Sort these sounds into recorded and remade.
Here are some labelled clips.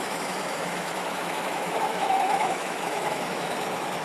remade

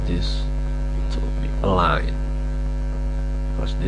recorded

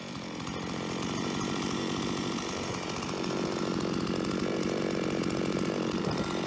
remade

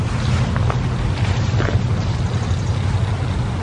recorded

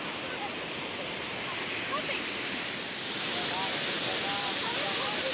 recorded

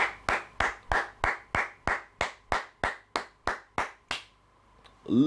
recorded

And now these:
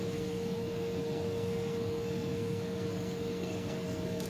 remade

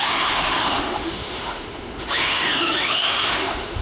remade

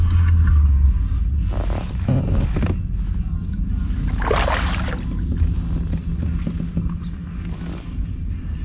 recorded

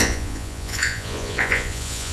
remade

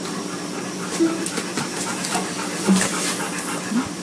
recorded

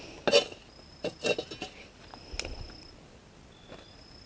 recorded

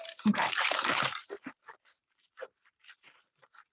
remade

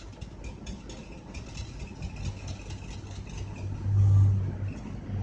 recorded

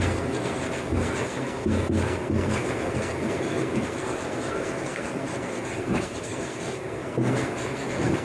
remade